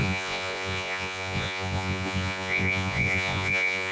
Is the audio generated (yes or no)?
yes